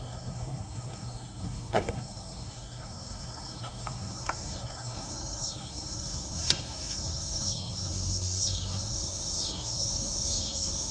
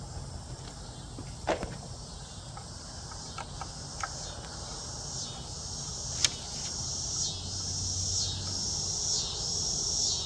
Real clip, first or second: second